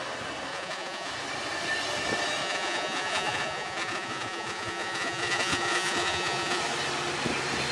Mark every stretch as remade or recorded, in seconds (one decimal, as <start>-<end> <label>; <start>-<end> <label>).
0.0-0.5 recorded; 0.5-1.1 remade; 1.1-2.4 recorded; 2.4-6.6 remade; 6.6-7.7 recorded